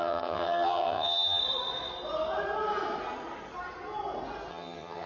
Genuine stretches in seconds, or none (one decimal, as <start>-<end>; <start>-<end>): 1.4-4.5